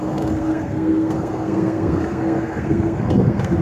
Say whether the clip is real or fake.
fake